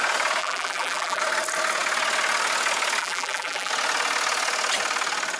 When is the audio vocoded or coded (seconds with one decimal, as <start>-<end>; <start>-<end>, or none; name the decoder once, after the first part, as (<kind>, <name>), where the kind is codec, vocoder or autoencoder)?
0.4-1.2 (vocoder, BigVGAN v2); 3.0-3.7